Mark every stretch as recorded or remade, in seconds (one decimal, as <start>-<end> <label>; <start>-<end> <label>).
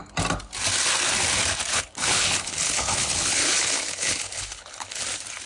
0.0-1.7 recorded; 1.7-5.0 remade; 5.0-5.5 recorded